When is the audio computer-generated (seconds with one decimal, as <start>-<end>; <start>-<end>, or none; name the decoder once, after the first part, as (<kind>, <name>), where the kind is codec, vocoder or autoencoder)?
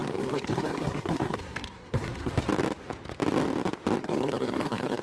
0.0-2.3 (codec, SNAC); 4.0-5.0